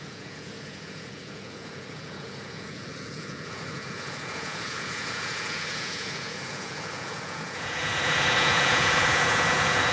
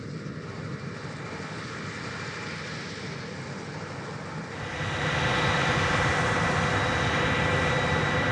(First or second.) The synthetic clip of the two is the first